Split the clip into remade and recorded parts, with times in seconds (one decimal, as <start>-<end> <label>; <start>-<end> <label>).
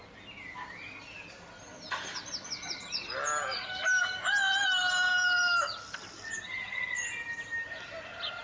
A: 0.0-8.4 recorded